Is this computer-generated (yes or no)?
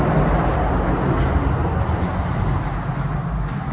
no